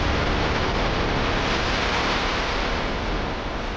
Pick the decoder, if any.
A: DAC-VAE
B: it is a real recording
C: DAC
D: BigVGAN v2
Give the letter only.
B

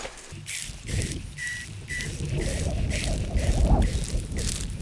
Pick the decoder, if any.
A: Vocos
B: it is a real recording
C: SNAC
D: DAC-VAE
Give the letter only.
B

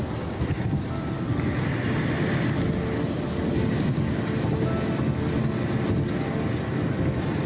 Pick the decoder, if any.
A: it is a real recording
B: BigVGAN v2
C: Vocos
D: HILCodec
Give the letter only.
A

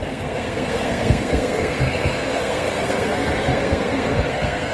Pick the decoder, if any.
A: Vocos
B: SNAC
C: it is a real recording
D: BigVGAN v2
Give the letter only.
B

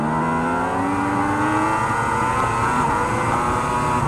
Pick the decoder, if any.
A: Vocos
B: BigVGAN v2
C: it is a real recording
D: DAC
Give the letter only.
C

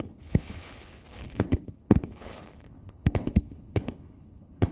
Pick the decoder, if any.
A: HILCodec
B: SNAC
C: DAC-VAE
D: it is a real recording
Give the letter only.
A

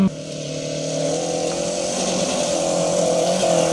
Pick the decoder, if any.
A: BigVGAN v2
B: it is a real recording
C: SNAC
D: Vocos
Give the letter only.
B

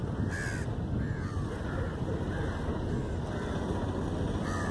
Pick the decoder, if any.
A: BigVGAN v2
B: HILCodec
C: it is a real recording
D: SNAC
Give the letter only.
C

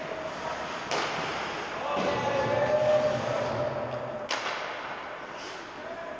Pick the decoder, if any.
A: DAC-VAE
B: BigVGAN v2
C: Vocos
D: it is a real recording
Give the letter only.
D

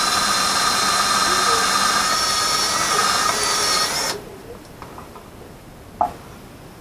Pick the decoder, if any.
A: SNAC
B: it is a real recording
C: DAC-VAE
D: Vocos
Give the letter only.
B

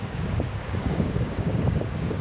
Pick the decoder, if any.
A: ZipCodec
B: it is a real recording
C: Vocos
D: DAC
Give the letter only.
D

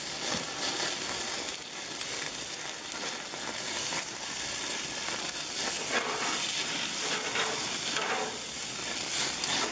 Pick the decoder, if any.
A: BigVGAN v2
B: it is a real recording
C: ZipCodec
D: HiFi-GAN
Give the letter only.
B